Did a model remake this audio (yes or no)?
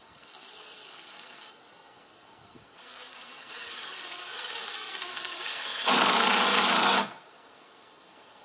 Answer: yes